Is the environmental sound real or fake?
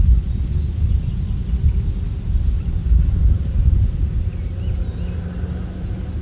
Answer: real